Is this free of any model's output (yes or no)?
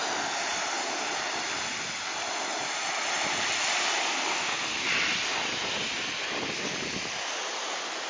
yes